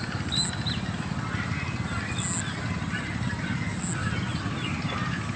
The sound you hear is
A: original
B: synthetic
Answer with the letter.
A